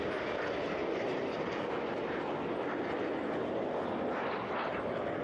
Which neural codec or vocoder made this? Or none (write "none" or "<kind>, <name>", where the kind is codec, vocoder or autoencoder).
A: none